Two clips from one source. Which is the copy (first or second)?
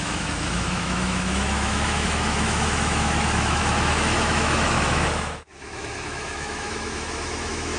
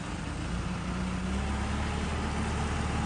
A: first